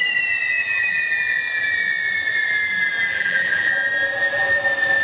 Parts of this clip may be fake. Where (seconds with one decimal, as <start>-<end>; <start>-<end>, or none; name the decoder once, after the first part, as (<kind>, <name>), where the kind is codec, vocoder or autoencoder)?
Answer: 3.1-3.7 (vocoder, BigVGAN v2)